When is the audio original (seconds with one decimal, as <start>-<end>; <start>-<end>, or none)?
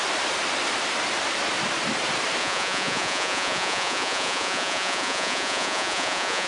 0.0-2.4